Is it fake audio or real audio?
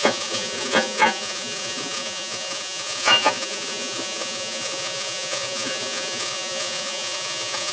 fake